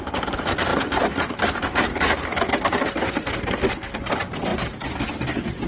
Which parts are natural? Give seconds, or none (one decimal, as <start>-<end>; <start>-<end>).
0.0-5.7